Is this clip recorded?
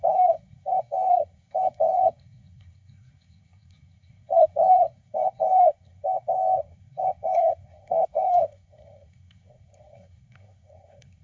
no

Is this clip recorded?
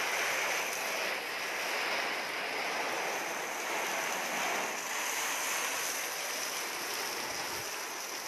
yes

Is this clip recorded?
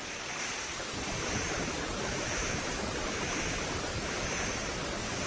yes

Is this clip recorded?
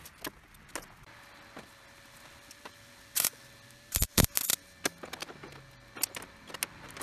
yes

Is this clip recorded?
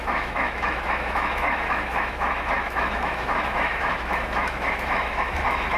no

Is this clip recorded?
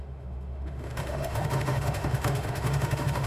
no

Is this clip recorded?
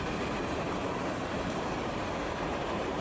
no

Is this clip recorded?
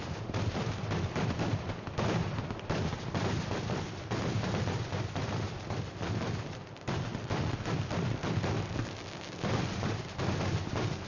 no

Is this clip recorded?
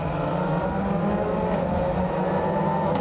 yes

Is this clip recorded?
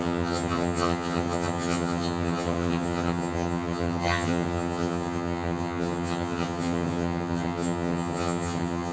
no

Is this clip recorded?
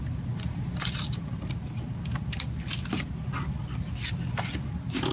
yes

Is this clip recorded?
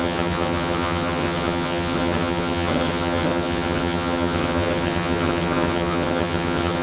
no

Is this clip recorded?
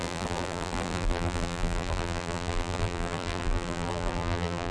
no